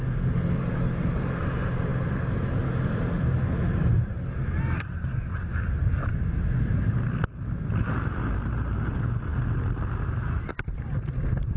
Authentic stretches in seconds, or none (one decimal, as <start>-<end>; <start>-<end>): 0.0-11.6